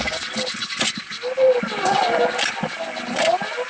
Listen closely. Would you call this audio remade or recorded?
recorded